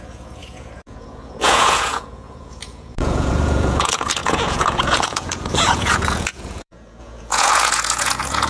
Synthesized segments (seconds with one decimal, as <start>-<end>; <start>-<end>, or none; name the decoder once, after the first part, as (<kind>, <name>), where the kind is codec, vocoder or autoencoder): 0.0-8.5 (vocoder, Vocos)